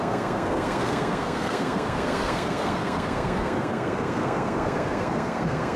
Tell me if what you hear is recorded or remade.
remade